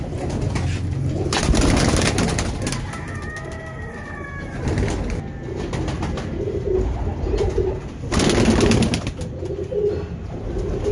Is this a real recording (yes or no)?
yes